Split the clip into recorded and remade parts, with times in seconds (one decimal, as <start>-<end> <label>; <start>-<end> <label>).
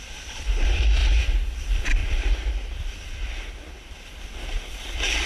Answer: 0.0-1.0 remade; 1.0-1.6 recorded; 1.6-5.3 remade